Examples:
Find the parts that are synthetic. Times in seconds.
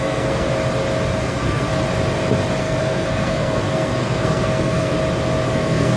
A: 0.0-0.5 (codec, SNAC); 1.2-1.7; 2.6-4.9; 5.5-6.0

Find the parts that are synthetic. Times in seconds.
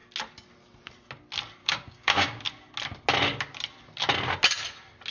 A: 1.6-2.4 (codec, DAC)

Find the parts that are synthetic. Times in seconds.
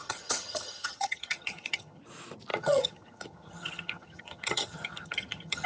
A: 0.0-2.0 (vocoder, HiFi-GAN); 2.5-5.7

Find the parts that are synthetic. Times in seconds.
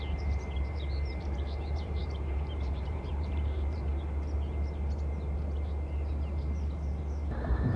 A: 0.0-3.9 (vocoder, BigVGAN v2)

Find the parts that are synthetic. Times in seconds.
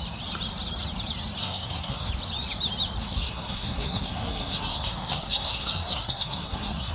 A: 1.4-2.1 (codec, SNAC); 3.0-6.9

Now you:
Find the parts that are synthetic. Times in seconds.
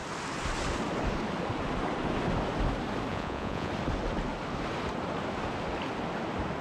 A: 3.1-3.7 (vocoder, Vocos)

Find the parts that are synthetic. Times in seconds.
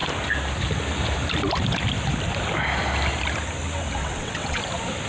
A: 4.0-4.6 (vocoder, WaveNeXt)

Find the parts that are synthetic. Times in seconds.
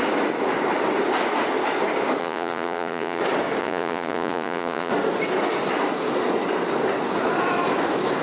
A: 2.2-3.2 (vocoder, Vocos); 3.6-4.9